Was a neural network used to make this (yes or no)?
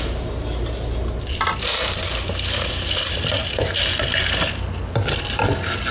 no